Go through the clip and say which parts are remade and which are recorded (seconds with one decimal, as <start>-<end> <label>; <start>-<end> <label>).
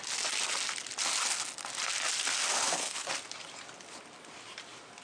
0.0-2.5 recorded; 2.5-3.1 remade; 3.1-5.0 recorded